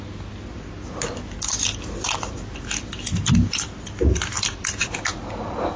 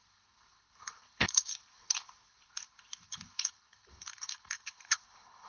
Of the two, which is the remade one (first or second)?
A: second